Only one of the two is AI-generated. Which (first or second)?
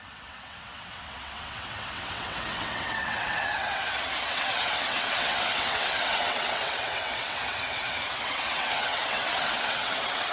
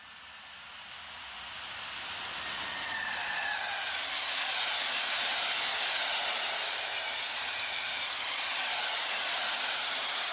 first